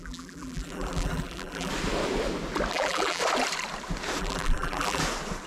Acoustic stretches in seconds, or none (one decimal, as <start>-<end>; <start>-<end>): 1.7-2.7; 3.2-4.2; 5.0-5.5